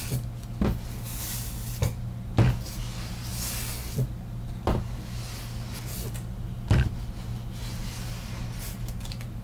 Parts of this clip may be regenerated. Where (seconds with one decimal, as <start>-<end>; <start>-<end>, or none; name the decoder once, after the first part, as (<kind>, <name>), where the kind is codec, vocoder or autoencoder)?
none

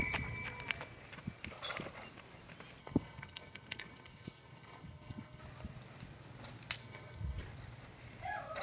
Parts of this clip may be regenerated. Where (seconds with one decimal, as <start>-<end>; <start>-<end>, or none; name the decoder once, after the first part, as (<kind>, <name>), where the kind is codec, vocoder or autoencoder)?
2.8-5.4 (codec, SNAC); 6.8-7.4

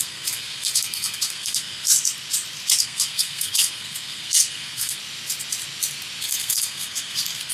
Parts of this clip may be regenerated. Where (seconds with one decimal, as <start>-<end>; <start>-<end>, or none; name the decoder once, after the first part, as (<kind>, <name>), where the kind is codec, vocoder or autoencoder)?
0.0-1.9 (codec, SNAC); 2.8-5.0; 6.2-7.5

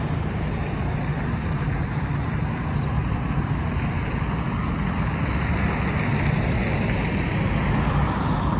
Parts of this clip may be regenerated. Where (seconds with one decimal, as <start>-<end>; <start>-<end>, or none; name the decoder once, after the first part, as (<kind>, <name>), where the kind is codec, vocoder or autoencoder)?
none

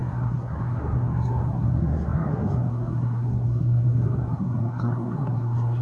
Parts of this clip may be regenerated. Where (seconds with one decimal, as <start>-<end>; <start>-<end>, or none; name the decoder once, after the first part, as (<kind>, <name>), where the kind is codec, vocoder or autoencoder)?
0.0-5.8 (codec, SNAC)

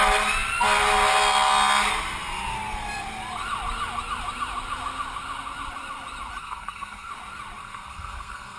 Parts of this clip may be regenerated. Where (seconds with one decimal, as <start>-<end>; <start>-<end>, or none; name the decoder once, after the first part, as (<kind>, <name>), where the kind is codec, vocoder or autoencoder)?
6.4-7.1 (codec, SNAC); 7.6-8.6